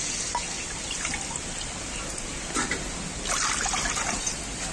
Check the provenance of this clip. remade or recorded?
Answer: recorded